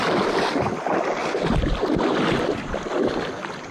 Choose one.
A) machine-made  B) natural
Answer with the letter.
B